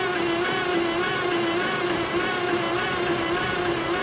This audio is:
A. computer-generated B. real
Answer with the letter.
B